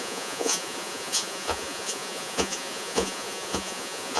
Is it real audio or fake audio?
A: fake